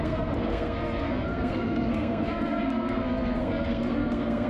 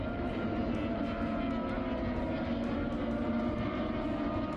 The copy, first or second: first